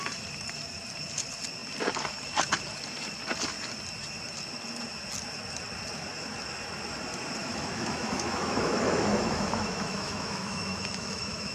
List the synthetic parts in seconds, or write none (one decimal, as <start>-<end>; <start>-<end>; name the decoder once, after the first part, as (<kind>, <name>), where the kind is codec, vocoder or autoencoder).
7.4-11.5 (autoencoder, DAC-VAE)